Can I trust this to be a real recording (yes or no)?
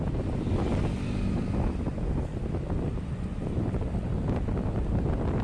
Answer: yes